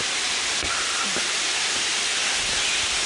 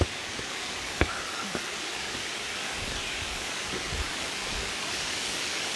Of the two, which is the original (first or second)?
first